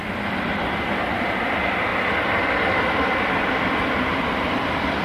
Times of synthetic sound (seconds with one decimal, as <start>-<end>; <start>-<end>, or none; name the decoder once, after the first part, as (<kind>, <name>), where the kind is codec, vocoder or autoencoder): 0.6-5.0 (vocoder, BigVGAN v2)